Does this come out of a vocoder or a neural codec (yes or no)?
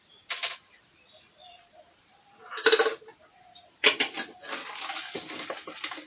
no